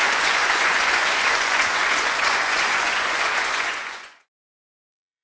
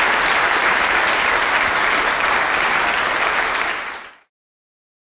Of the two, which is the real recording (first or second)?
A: second